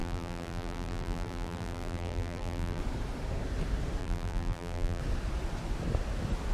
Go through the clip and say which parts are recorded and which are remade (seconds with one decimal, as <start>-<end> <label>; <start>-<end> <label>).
0.0-2.8 remade; 2.8-4.0 recorded; 4.0-5.0 remade; 5.0-6.5 recorded